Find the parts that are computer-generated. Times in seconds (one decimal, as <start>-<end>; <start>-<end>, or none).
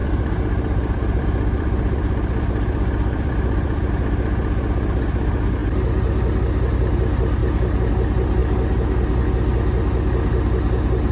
0.0-3.9